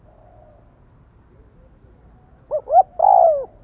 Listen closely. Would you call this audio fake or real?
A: real